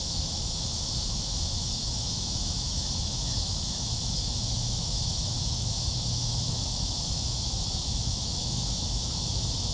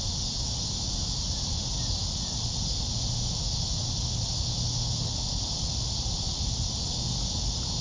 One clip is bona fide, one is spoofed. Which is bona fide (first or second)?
second